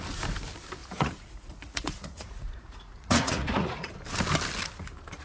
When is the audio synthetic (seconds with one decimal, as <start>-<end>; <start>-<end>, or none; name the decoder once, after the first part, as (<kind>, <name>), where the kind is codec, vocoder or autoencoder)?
0.8-3.9 (vocoder, Vocos)